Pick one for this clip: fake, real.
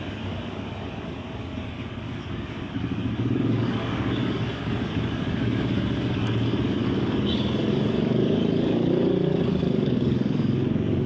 fake